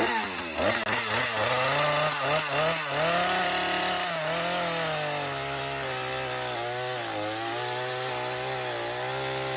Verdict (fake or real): real